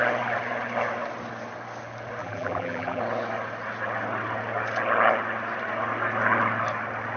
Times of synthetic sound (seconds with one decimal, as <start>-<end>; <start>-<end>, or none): 2.2-3.0